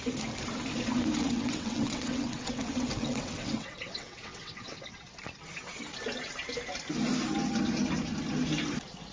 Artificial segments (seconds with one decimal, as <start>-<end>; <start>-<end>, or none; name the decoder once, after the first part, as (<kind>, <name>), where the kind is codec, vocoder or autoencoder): 1.2-4.8 (vocoder, WaveNeXt)